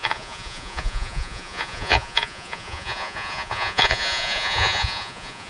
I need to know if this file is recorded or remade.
remade